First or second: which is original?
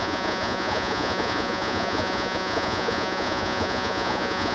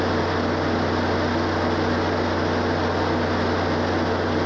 second